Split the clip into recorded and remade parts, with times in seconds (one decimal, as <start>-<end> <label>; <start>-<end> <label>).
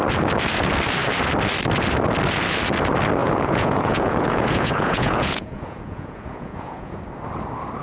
0.0-3.2 recorded; 3.2-7.0 remade; 7.0-7.8 recorded